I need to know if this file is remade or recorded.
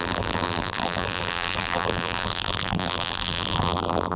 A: remade